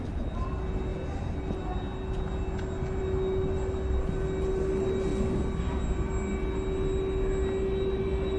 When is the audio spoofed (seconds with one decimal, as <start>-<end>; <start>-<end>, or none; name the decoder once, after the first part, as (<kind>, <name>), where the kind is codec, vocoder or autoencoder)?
none

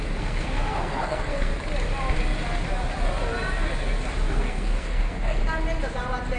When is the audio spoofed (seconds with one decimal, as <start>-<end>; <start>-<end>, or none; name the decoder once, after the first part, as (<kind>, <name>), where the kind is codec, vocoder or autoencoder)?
0.0-1.5 (codec, SNAC); 4.3-5.4

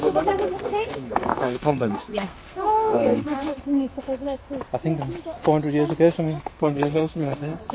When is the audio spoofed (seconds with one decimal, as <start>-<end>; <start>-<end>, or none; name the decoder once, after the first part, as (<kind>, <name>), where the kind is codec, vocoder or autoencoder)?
0.0-4.4 (codec, SNAC); 6.4-7.7

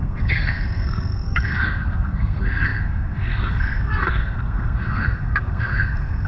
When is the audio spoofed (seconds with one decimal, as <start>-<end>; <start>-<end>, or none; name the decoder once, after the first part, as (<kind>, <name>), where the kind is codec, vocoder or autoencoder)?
0.0-6.3 (codec, SNAC)

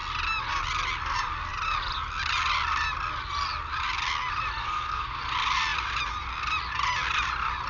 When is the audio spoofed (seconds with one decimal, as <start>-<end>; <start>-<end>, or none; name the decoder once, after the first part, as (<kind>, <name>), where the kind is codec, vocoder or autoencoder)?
4.6-5.2 (codec, SNAC)

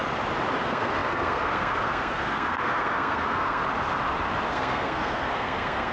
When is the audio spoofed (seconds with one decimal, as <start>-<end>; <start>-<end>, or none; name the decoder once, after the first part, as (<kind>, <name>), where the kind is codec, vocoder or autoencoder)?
0.6-3.6 (codec, SNAC); 4.5-5.9

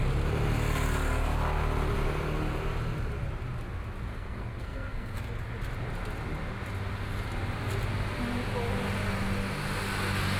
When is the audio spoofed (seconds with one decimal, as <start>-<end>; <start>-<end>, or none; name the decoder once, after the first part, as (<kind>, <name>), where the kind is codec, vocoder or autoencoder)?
4.1-5.4 (codec, SNAC)

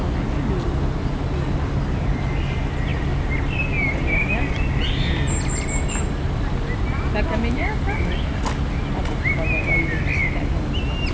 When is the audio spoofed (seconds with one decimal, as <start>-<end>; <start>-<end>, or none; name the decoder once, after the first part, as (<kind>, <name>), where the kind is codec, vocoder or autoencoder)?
none